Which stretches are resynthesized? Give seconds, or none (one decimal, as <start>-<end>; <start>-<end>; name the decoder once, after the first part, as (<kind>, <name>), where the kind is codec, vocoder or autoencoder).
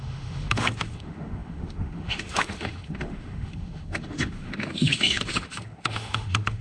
0.0-6.6 (autoencoder, DAC-VAE)